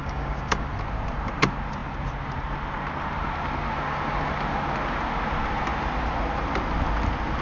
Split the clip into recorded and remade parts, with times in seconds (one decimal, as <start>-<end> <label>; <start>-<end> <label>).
0.0-0.7 remade; 0.7-7.4 recorded